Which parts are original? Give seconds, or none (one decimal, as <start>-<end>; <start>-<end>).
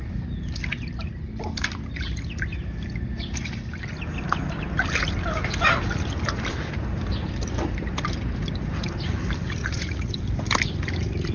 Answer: 0.0-9.6; 10.1-11.3